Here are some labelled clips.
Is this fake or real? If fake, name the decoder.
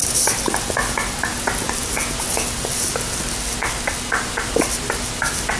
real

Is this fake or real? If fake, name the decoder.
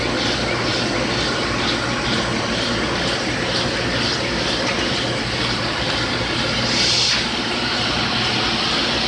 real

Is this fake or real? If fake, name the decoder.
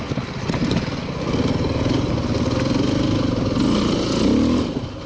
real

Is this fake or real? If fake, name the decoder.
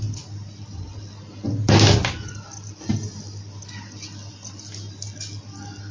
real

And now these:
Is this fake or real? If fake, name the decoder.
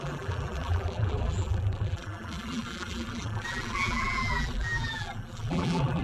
fake, vocoder, BigVGAN v2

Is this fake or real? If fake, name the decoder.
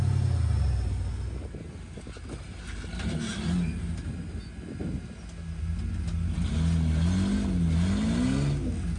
real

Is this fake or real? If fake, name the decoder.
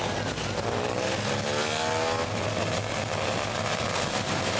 real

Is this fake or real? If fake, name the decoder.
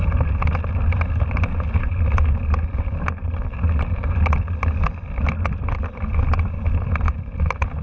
real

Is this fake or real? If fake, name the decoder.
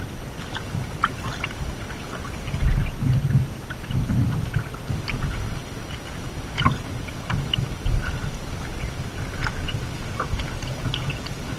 real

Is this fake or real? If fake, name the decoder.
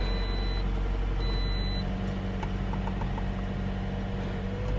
real